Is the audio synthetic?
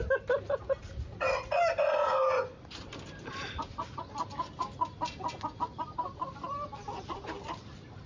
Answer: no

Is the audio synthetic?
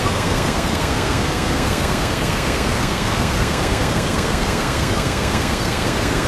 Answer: yes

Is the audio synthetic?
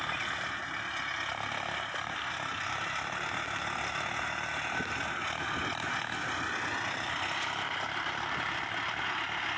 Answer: no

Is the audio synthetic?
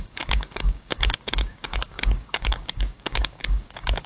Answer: yes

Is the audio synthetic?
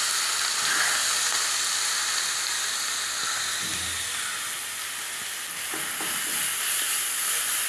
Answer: no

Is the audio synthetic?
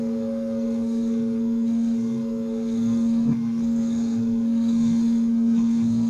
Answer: yes